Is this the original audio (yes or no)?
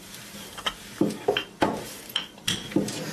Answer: no